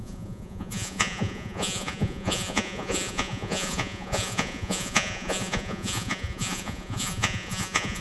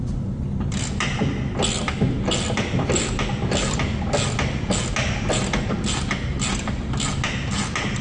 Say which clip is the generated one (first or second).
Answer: first